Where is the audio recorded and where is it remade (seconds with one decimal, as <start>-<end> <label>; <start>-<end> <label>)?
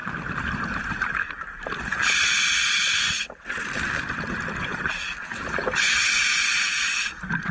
0.0-7.5 recorded